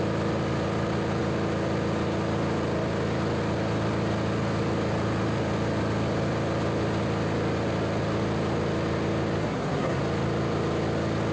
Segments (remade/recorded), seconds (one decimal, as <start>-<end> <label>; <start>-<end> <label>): 0.0-9.4 recorded; 9.4-10.0 remade; 10.0-11.3 recorded